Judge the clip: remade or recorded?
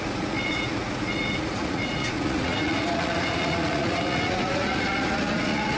remade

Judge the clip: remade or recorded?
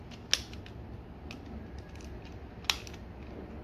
recorded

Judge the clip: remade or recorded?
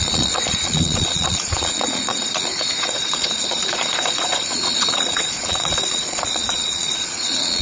remade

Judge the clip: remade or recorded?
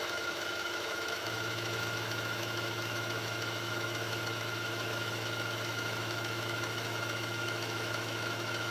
remade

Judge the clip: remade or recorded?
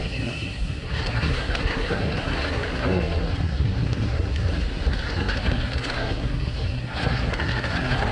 remade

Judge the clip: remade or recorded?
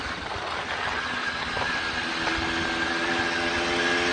recorded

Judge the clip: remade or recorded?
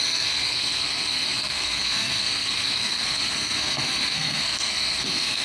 remade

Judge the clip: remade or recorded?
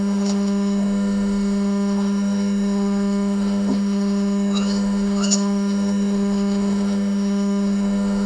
remade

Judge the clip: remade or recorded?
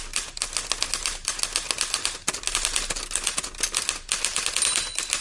recorded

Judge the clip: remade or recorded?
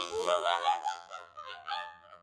remade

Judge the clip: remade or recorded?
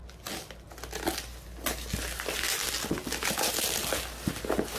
recorded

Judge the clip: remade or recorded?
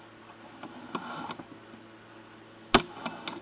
recorded